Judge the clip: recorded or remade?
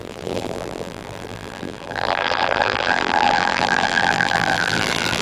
remade